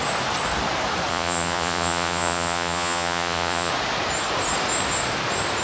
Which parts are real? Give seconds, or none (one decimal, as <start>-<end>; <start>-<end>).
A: 0.0-1.1; 3.7-5.6